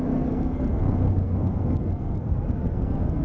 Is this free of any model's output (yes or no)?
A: no